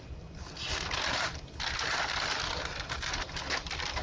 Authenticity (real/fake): real